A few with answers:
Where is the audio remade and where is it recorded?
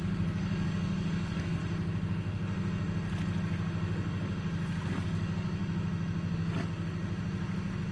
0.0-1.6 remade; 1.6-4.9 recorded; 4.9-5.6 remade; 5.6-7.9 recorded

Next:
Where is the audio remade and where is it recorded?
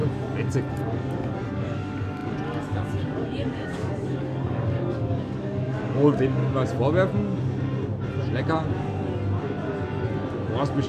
0.0-0.7 recorded; 0.7-6.4 remade; 6.4-10.9 recorded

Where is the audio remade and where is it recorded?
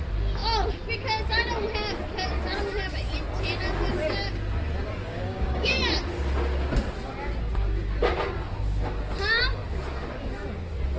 0.0-5.0 recorded; 5.0-5.8 remade; 5.8-11.0 recorded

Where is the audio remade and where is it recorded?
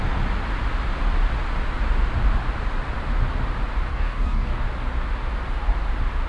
0.0-3.9 recorded; 3.9-4.5 remade; 4.5-6.3 recorded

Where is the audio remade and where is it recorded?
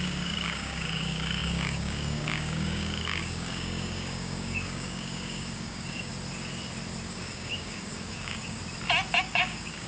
0.0-6.1 remade; 6.1-7.1 recorded; 7.1-8.6 remade; 8.6-9.2 recorded; 9.2-9.9 remade